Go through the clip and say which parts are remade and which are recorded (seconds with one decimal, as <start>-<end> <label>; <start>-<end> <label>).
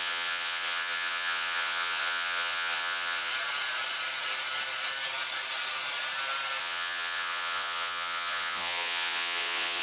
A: 0.0-3.3 remade; 3.3-6.6 recorded; 6.6-9.8 remade